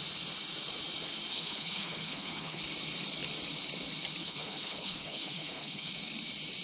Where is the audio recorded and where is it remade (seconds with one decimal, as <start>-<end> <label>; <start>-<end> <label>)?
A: 0.0-1.3 recorded; 1.3-2.6 remade; 2.6-4.2 recorded; 4.2-5.9 remade; 5.9-6.6 recorded